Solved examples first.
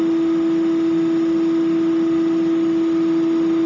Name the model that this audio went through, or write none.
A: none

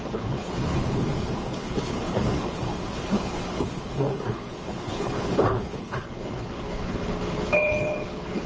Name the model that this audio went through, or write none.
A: codec, HILCodec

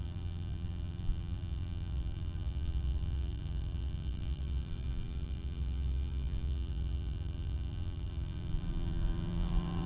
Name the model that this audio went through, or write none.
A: vocoder, BigVGAN v2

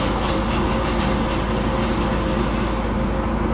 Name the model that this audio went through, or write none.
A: none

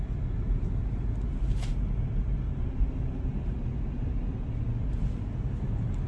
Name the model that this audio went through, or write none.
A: none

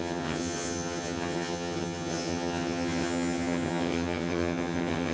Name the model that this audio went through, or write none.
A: vocoder, HiFi-GAN